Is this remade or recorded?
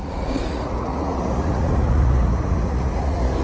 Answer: remade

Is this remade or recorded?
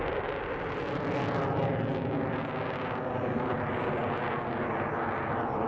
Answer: recorded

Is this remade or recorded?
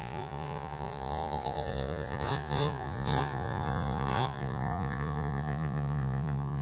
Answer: remade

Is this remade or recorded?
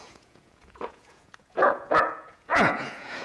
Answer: remade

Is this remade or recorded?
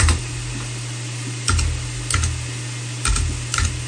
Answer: recorded